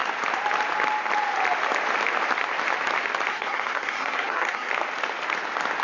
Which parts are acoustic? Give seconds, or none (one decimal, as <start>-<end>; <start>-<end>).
0.0-3.3; 4.7-5.8